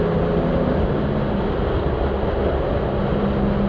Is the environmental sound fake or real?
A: real